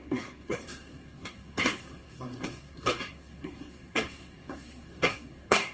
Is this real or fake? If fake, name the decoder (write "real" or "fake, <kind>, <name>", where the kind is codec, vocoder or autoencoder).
fake, codec, SNAC